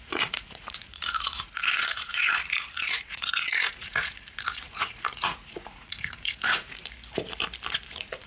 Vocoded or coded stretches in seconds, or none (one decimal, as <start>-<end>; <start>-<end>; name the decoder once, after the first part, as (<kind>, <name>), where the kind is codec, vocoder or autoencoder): 0.0-6.8 (vocoder, Vocos); 7.9-8.3